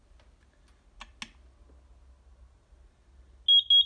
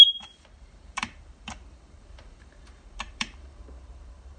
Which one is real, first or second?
first